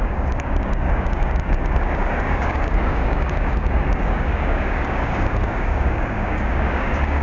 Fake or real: fake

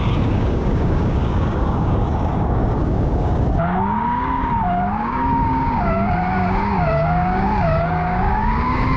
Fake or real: fake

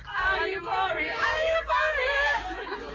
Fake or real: fake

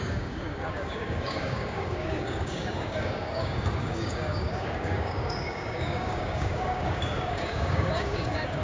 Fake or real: fake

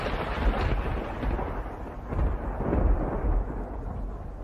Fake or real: real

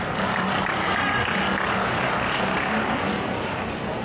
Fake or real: real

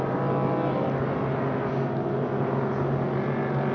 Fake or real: real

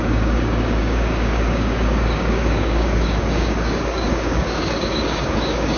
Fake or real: fake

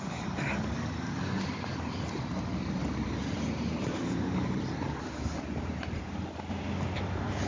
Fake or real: real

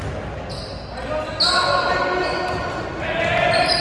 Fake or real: real